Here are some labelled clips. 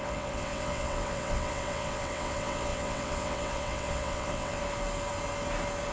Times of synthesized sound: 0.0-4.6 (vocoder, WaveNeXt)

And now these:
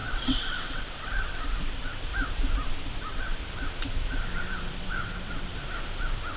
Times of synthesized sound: 0.0-2.1 (vocoder, WaveNeXt); 3.0-3.4; 4.7-5.5

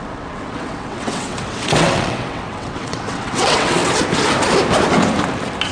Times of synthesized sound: 0.0-3.8 (vocoder, WaveNeXt)

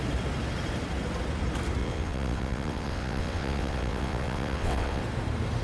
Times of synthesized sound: 1.8-5.0 (vocoder, WaveNeXt)

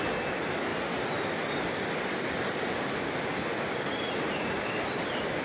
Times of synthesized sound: none

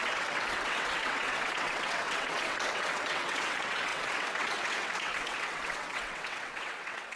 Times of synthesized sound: 0.0-7.2 (vocoder, WaveNeXt)

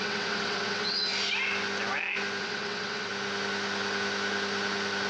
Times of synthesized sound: 0.0-1.1 (vocoder, WaveNeXt); 2.4-3.1